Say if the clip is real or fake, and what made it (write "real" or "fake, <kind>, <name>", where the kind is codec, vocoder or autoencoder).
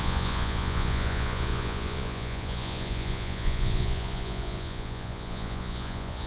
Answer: fake, vocoder, Vocos